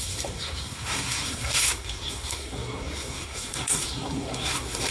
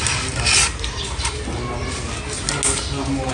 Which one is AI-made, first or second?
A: first